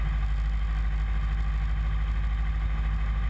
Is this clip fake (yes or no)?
no